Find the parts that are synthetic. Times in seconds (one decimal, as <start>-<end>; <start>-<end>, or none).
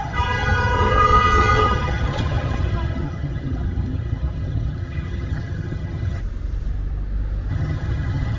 0.0-6.2; 7.5-8.4